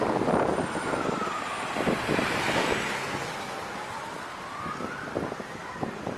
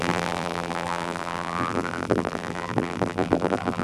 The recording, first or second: first